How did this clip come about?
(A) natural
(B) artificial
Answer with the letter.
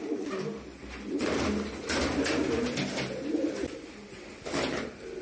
A